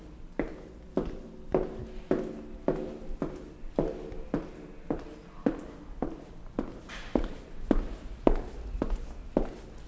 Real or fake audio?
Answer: real